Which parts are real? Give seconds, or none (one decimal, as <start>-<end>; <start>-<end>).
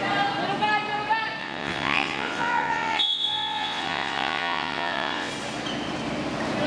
0.0-1.4; 5.3-6.7